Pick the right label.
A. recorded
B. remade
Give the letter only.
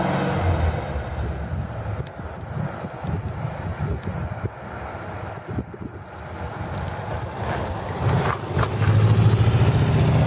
A